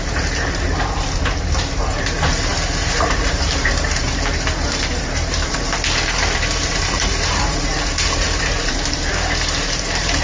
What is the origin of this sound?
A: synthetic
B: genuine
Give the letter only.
A